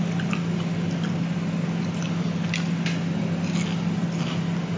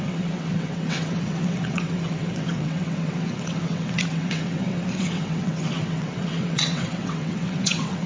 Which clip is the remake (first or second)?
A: second